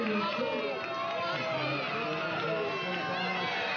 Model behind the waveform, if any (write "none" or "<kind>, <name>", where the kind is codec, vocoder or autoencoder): none